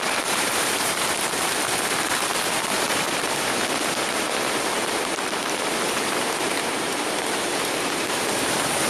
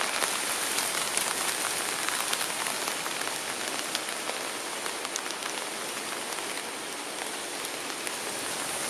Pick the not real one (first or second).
first